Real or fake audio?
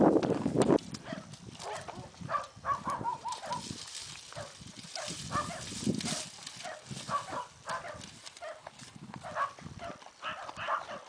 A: real